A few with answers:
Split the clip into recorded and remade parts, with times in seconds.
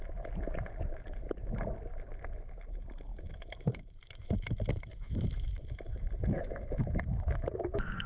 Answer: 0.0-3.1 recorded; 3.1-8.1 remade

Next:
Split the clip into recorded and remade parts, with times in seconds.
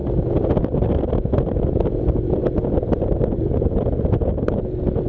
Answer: 0.0-5.1 recorded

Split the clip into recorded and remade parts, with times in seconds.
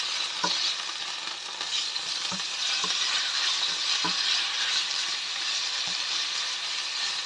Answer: 0.0-1.7 recorded; 1.7-6.1 remade; 6.1-7.3 recorded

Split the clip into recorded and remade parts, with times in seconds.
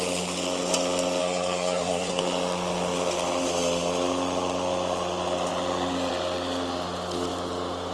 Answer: 0.0-1.2 recorded; 1.2-2.2 remade; 2.2-7.9 recorded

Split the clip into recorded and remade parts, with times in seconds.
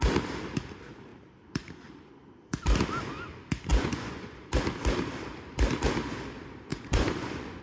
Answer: 0.0-3.7 recorded; 3.7-4.4 remade; 4.4-6.7 recorded; 6.7-7.6 remade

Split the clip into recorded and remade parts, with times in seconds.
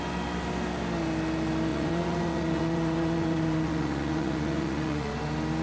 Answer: 0.0-1.7 recorded; 1.7-5.1 remade; 5.1-5.6 recorded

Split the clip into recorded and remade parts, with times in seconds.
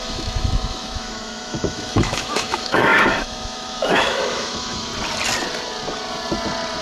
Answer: 0.0-4.9 remade; 4.9-6.8 recorded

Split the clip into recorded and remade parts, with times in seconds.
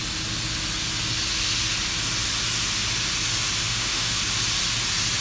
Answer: 0.0-3.6 recorded; 3.6-4.2 remade; 4.2-5.2 recorded